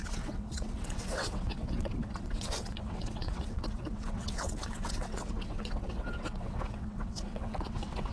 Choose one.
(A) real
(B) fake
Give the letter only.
B